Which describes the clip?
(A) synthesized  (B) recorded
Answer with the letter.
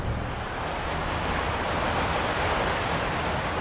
B